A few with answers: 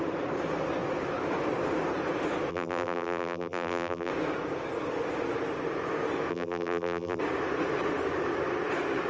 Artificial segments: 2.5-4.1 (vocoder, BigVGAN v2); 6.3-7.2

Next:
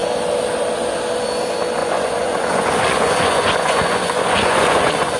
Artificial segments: 1.8-5.2 (vocoder, Vocos)